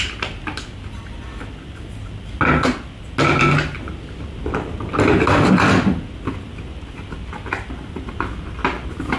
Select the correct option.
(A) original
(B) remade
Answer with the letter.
A